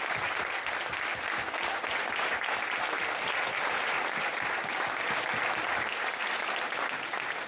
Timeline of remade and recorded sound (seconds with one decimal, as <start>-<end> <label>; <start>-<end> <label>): 0.0-7.5 recorded